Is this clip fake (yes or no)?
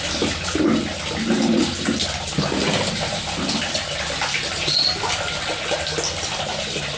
no